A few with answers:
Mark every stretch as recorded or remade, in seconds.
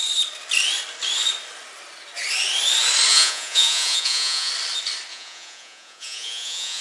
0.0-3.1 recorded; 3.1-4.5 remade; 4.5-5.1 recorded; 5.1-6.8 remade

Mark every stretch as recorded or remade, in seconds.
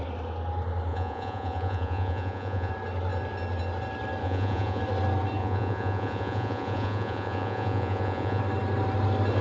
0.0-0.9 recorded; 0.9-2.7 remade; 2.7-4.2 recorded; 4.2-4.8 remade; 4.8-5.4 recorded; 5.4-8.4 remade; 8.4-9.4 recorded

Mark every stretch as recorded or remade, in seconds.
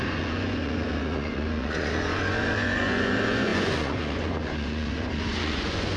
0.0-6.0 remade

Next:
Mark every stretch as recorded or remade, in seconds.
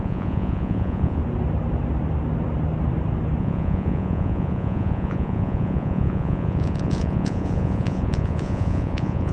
0.0-1.2 remade; 1.2-3.4 recorded; 3.4-9.3 remade